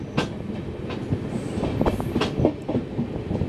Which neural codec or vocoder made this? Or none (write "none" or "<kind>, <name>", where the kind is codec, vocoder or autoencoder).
none